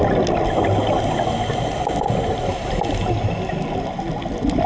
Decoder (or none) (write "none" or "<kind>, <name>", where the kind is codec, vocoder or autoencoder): none